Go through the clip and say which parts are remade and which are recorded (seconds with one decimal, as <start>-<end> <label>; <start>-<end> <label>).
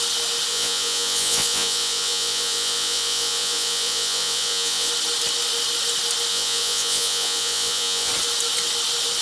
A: 0.0-0.5 recorded; 0.5-4.9 remade; 4.9-6.3 recorded; 6.3-8.1 remade; 8.1-9.2 recorded